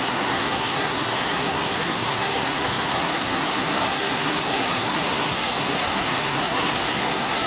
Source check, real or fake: fake